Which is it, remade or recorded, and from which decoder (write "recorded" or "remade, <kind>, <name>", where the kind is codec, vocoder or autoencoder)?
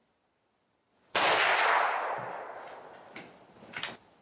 recorded